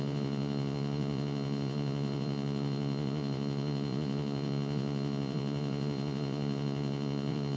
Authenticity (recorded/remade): remade